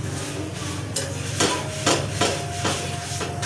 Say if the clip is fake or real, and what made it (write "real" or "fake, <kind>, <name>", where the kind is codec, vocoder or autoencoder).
real